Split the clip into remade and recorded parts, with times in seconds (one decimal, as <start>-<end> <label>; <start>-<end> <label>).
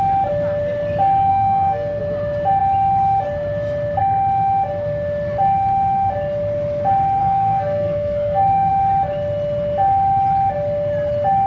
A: 0.0-1.3 recorded; 1.3-2.0 remade; 2.0-7.2 recorded; 7.2-8.7 remade; 8.7-11.5 recorded